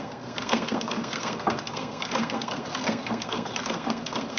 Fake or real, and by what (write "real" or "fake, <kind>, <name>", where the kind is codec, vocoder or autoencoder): fake, codec, SNAC